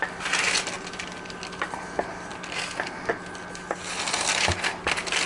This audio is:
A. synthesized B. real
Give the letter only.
B